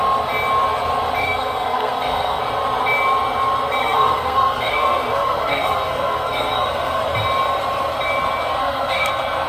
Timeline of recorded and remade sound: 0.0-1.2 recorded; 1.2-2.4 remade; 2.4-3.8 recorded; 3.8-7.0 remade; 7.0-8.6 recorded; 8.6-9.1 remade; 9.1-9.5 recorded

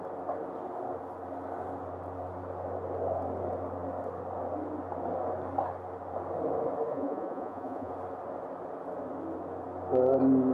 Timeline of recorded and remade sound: 0.0-6.9 recorded; 6.9-7.9 remade; 7.9-10.5 recorded

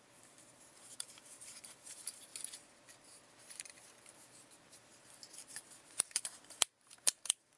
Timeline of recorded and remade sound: 0.0-2.3 remade; 2.3-3.5 recorded; 3.5-4.9 remade; 4.9-6.7 recorded; 6.7-7.6 remade